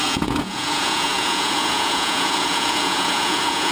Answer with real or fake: fake